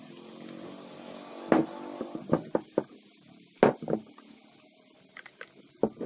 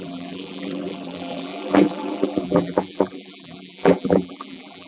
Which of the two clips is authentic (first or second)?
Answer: first